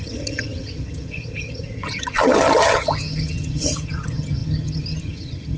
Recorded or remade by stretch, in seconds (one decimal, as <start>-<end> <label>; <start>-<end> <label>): 0.0-5.6 remade